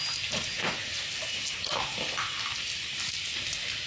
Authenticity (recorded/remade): recorded